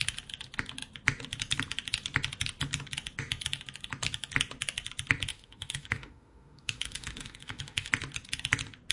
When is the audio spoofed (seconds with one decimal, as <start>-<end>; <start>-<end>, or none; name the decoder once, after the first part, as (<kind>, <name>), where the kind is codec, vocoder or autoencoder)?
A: 5.3-7.9 (autoencoder, DAC-VAE)